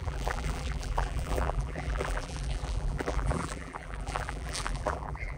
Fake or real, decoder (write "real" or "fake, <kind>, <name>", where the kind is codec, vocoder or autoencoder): fake, vocoder, BigVGAN v2